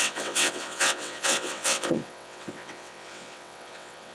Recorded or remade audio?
remade